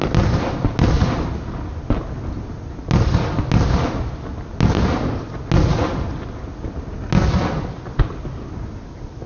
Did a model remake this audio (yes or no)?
no